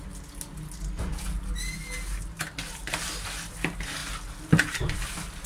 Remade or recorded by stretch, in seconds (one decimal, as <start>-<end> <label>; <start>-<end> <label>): 0.0-5.5 recorded